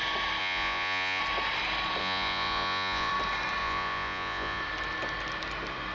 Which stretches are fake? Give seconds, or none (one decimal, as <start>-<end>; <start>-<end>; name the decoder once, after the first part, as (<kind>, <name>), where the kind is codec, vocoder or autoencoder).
0.4-1.2 (vocoder, Vocos); 2.0-3.1; 3.6-4.6